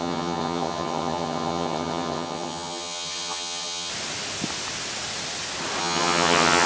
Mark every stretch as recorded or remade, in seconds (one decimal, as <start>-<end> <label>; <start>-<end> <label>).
0.0-3.9 remade; 3.9-5.8 recorded; 5.8-6.7 remade